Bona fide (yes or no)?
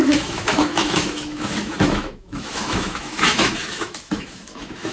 no